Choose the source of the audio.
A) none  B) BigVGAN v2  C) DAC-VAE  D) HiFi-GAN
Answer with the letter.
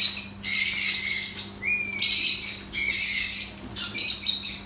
A